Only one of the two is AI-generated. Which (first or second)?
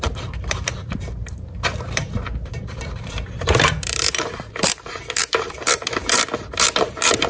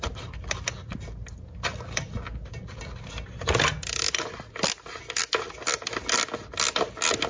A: first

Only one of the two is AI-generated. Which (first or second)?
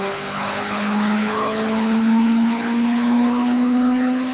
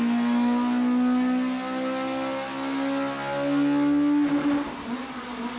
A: first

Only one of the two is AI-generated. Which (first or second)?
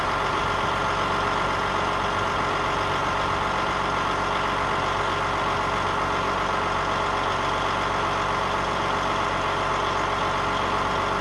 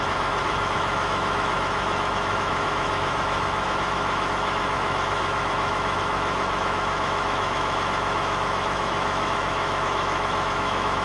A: second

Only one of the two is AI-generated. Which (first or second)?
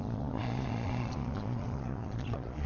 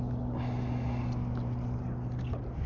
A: first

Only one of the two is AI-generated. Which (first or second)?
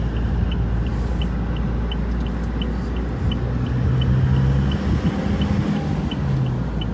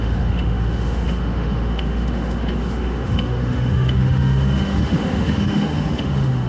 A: second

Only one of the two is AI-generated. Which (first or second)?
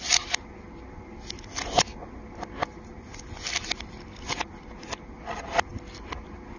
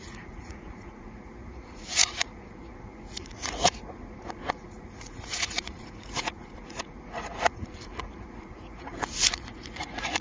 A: second